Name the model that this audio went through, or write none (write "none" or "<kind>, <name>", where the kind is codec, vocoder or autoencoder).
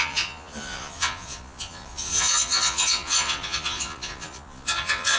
vocoder, Vocos